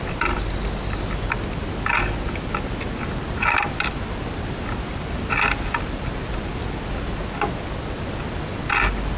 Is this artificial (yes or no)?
no